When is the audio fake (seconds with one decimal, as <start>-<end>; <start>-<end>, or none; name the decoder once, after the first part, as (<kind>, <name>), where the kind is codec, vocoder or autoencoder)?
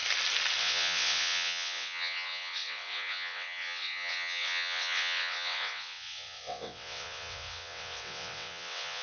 0.6-9.0 (vocoder, WaveNeXt)